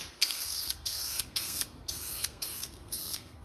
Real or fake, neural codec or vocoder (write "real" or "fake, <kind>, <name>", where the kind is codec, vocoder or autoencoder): fake, codec, SNAC